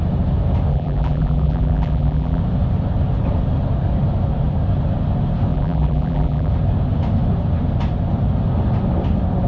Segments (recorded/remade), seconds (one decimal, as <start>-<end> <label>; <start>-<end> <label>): 0.0-0.7 recorded; 0.7-2.4 remade; 2.4-5.5 recorded; 5.5-6.5 remade; 6.5-9.5 recorded